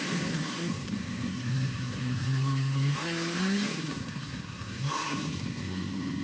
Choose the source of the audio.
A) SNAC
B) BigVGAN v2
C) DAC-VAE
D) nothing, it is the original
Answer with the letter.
A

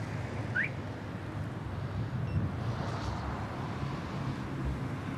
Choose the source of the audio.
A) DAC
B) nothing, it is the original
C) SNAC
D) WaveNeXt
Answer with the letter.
B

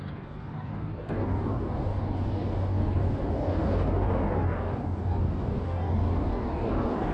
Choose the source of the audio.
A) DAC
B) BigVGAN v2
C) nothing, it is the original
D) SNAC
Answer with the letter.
A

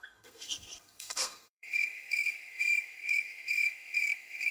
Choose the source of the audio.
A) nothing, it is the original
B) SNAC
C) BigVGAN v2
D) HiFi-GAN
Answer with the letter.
B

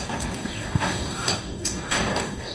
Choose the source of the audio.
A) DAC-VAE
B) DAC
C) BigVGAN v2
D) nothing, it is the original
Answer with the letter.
B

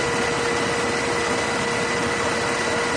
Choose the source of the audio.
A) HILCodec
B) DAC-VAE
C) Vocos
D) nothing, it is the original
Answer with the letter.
D